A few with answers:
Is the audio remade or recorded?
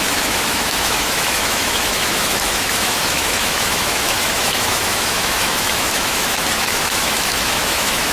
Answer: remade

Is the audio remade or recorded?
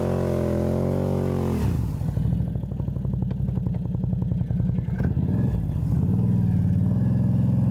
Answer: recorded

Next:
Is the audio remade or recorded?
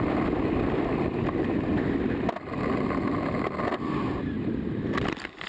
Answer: recorded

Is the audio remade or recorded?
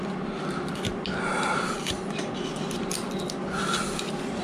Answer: recorded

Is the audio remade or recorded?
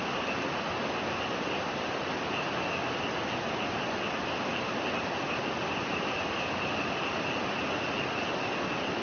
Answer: recorded